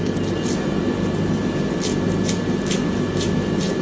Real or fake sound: real